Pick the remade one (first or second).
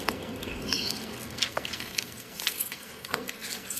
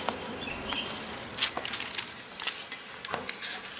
first